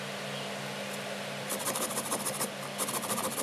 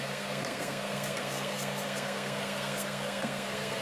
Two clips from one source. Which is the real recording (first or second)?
first